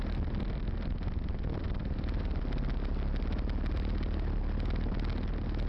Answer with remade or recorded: recorded